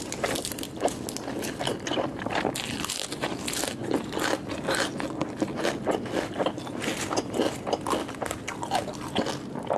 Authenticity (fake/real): real